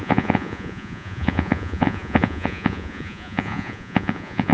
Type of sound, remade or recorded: remade